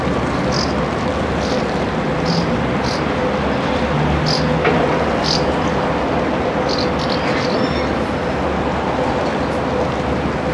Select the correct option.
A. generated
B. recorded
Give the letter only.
B